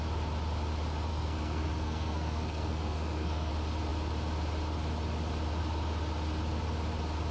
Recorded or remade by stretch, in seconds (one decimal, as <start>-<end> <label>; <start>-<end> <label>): 0.0-1.1 recorded; 1.1-3.5 remade; 3.5-7.3 recorded